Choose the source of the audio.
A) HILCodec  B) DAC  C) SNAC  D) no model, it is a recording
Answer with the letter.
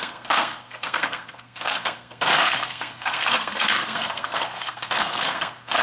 C